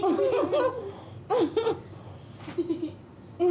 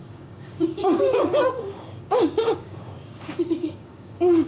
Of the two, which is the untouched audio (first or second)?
first